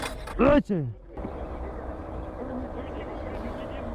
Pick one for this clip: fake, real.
real